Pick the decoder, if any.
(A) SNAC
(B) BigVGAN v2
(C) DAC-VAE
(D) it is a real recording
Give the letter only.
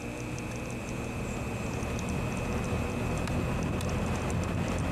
D